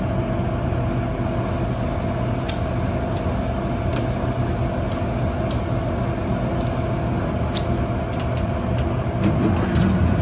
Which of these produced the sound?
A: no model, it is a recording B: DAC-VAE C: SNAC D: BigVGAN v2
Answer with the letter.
A